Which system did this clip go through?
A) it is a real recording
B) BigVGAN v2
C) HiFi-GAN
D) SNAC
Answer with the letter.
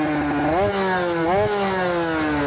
A